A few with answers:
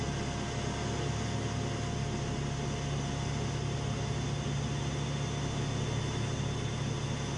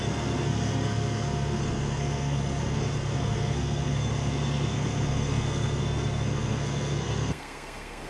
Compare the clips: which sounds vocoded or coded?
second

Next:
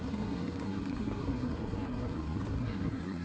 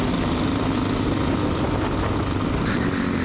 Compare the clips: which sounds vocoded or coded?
first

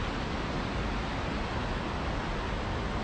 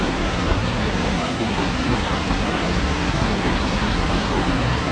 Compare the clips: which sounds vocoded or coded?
second